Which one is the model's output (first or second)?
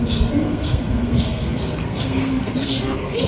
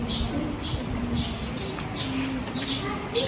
first